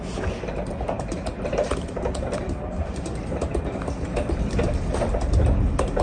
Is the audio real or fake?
real